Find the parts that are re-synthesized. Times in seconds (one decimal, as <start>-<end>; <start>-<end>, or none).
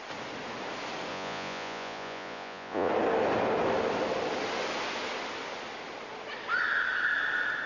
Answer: 1.1-2.9